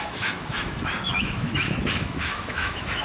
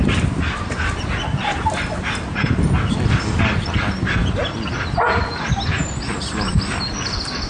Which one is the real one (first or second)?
second